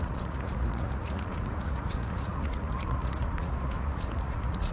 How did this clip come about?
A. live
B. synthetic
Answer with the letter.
B